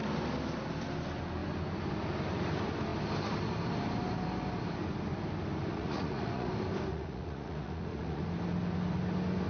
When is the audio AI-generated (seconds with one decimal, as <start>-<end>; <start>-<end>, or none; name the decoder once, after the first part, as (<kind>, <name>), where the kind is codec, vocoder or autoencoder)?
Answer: 5.7-6.5 (vocoder, Vocos); 6.9-8.2

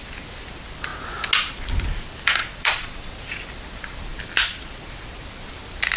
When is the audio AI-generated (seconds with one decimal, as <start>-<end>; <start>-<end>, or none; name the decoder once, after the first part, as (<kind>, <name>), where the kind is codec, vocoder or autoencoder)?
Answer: 2.4-3.1 (vocoder, Vocos)